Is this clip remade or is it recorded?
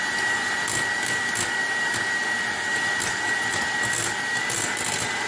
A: recorded